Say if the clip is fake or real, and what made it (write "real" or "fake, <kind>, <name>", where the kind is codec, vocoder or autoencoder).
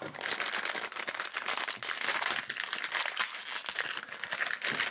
real